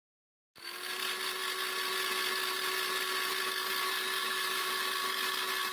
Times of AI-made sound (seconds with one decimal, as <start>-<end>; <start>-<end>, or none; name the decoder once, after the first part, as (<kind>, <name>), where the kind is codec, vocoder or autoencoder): 4.2-4.7 (autoencoder, DAC-VAE)